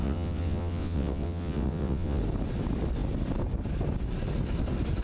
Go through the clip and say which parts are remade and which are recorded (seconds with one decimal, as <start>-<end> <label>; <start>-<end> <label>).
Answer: 0.0-2.2 remade; 2.2-5.0 recorded